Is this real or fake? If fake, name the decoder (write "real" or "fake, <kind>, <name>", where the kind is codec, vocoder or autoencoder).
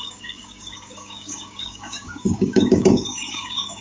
fake, codec, DAC